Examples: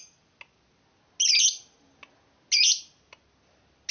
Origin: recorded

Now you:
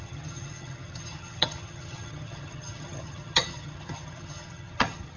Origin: remade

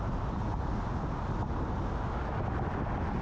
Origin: recorded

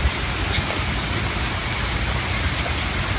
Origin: recorded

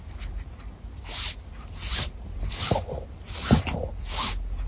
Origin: recorded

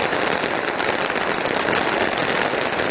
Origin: recorded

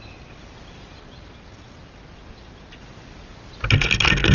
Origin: recorded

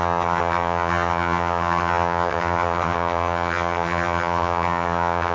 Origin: remade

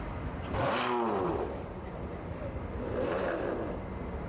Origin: recorded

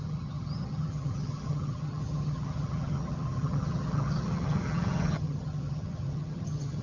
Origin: remade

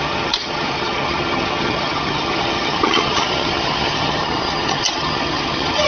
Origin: remade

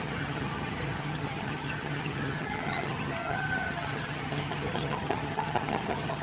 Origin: remade